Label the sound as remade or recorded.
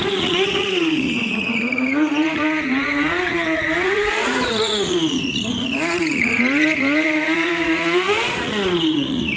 remade